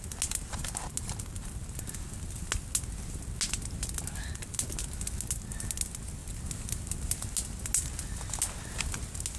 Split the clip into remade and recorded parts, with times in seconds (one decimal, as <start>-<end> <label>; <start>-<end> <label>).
0.0-9.4 recorded